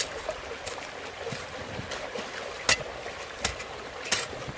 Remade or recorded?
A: recorded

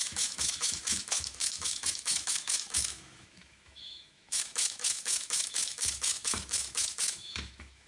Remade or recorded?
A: remade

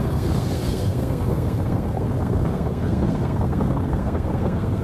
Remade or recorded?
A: remade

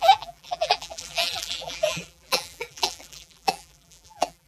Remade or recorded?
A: remade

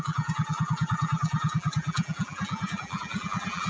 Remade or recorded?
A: remade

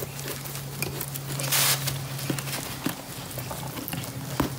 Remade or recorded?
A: recorded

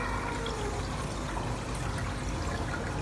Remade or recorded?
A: recorded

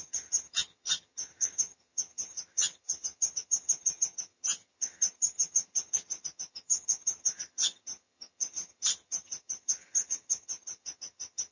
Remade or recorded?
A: remade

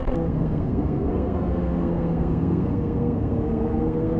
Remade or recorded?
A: remade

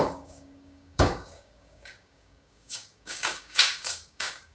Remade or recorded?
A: remade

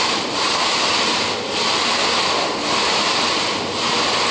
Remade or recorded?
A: recorded